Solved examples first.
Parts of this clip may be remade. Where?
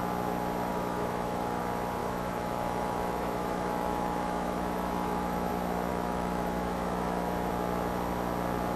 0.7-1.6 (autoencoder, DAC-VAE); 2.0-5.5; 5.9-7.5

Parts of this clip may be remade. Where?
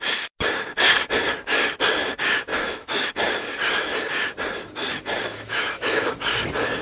2.5-3.1 (autoencoder, DAC-VAE); 5.3-6.1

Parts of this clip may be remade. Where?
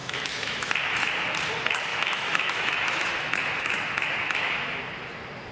0.0-0.7 (autoencoder, DAC-VAE); 1.9-4.8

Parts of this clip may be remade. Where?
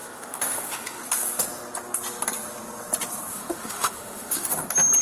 0.0-1.0 (autoencoder, DAC-VAE); 3.3-4.5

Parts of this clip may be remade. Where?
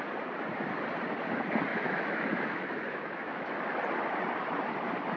1.7-3.5 (autoencoder, DAC-VAE)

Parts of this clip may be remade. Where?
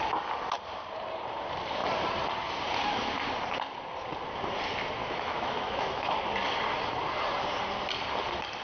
5.0-6.2 (autoencoder, DAC-VAE)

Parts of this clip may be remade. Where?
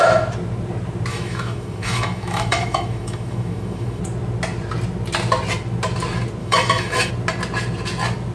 1.1-4.0 (autoencoder, DAC-VAE); 6.4-7.1